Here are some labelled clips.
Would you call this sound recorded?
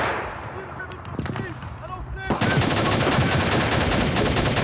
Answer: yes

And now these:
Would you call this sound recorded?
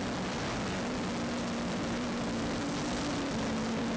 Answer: yes